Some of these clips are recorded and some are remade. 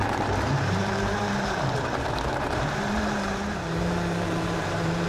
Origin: remade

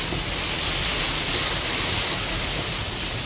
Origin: recorded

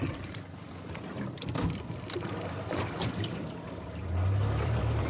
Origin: remade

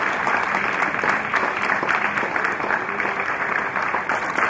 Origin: remade